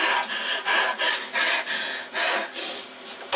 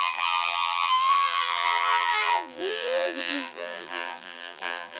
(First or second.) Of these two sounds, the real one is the first